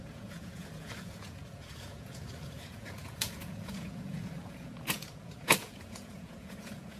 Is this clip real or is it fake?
fake